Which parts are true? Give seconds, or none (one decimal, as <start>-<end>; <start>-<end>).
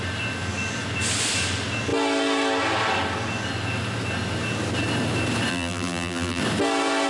0.0-5.5; 6.4-7.1